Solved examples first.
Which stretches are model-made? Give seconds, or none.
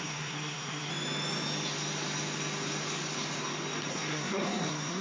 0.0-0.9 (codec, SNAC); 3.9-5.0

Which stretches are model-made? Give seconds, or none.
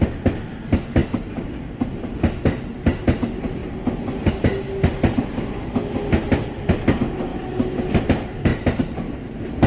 none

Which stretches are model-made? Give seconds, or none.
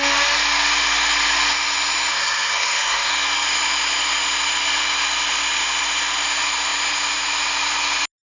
2.1-3.1 (codec, SNAC)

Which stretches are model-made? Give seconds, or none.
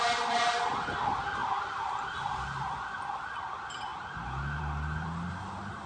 none